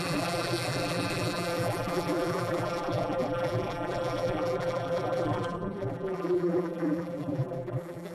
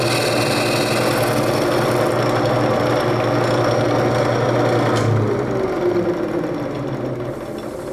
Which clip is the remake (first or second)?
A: first